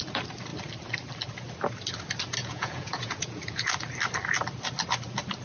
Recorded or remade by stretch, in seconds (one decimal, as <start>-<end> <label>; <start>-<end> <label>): 0.0-2.4 recorded; 2.4-3.7 remade; 3.7-5.4 recorded